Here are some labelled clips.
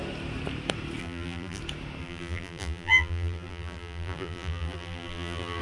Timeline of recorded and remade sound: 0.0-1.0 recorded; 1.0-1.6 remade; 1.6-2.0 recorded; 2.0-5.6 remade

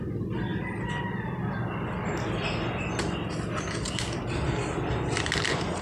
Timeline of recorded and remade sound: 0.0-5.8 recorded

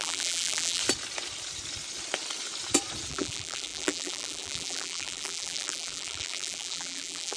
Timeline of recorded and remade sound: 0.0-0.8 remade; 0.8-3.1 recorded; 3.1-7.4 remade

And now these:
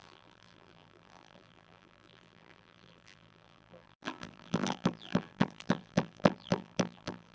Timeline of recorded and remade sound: 0.0-7.3 remade

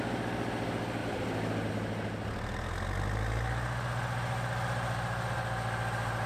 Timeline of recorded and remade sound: 0.0-6.3 recorded